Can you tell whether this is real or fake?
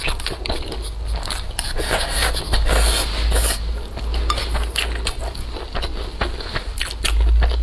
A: real